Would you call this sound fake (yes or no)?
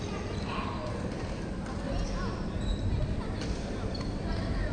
no